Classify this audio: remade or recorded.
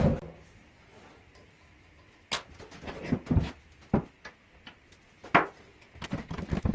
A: recorded